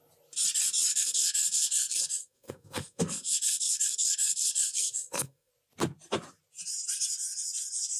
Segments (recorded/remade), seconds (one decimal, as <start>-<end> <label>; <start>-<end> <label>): 0.0-0.9 recorded; 0.9-5.5 remade; 5.5-8.0 recorded